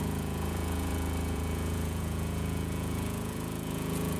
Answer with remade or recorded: remade